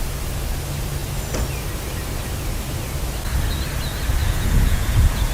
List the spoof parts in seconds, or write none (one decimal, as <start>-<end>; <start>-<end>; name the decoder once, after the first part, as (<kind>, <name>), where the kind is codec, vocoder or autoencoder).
4.2-5.3 (vocoder, Vocos)